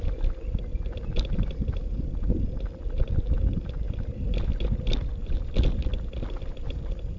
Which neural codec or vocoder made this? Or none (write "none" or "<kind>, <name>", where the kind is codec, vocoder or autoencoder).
none